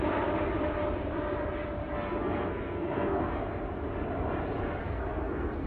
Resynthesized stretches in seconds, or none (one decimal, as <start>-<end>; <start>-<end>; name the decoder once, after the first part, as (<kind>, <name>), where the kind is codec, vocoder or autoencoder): 1.8-3.4 (codec, SNAC); 4.8-5.7